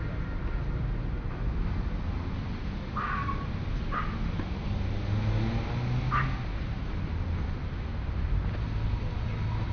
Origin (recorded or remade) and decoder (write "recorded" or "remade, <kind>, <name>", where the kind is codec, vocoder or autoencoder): recorded